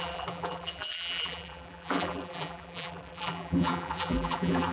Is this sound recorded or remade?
remade